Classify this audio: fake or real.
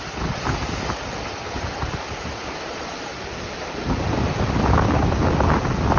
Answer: real